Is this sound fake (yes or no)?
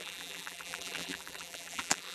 yes